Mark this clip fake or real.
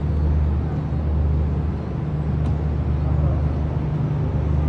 real